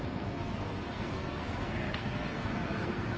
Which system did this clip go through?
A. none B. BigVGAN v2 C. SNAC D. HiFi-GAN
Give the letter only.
C